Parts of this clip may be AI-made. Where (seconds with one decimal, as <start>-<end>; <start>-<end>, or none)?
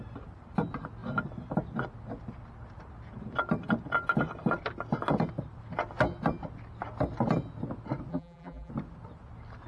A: 8.1-8.7